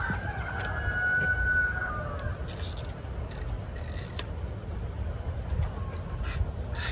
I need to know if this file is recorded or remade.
recorded